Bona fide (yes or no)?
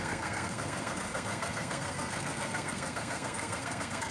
no